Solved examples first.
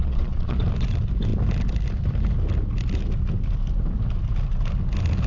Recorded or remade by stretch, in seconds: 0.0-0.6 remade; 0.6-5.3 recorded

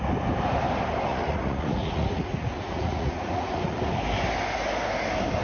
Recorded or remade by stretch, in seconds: 0.0-1.1 recorded; 1.1-3.8 remade; 3.8-5.4 recorded

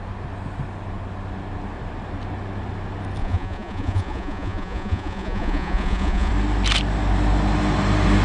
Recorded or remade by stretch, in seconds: 0.0-3.2 recorded; 3.2-6.3 remade; 6.3-8.2 recorded

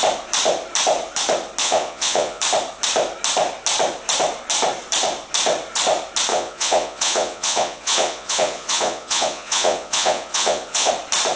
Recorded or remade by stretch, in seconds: 0.0-1.6 recorded; 1.6-2.4 remade; 2.4-6.3 recorded; 6.3-10.9 remade; 10.9-11.4 recorded

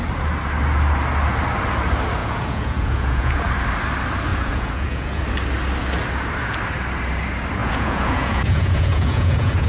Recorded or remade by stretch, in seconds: 0.0-2.2 recorded; 2.2-3.5 remade; 3.5-4.3 recorded; 4.3-5.2 remade; 5.2-7.6 recorded; 7.6-9.7 remade

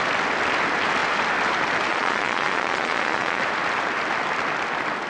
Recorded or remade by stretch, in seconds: 0.0-1.9 recorded; 1.9-3.4 remade; 3.4-5.1 recorded